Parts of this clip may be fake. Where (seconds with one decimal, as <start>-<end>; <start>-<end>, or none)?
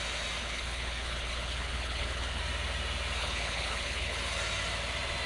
0.4-2.4; 3.2-4.2